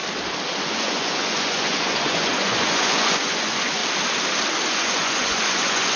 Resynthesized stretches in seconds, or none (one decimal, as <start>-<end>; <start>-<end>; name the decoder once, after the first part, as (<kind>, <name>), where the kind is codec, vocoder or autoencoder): 0.6-3.8 (vocoder, Vocos); 4.7-6.0